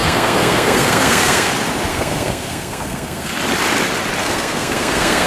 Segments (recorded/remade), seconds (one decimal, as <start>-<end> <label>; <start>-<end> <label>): 0.0-1.5 remade; 1.5-1.9 recorded; 1.9-3.3 remade; 3.3-4.2 recorded; 4.2-5.3 remade